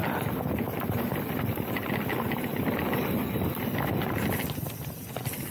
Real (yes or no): yes